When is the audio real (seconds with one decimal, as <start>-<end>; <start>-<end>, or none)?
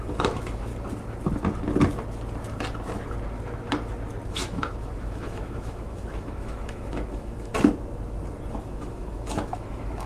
0.7-4.3; 7.5-8.5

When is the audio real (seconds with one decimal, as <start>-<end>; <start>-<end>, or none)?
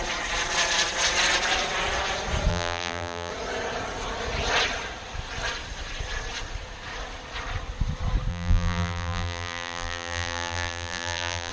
0.0-2.5; 3.3-8.3